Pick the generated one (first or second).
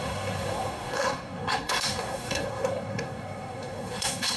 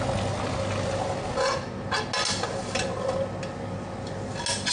first